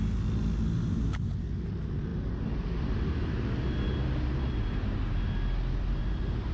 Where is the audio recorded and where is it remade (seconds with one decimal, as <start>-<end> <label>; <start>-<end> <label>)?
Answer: 0.0-6.5 recorded